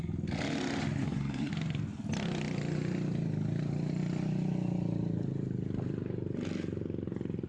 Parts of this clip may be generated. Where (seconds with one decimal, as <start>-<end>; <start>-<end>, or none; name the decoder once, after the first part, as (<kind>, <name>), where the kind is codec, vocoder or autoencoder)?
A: 1.0-1.5 (codec, SNAC)